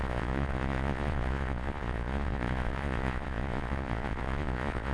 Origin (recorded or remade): remade